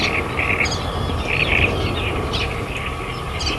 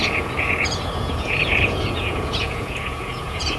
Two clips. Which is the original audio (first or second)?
first